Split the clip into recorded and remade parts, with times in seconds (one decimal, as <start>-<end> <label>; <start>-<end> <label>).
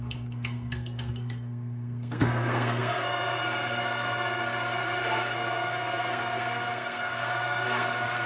0.0-8.3 remade